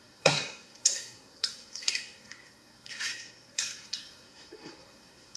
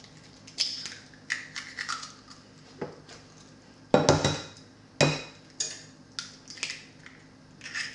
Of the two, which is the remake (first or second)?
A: first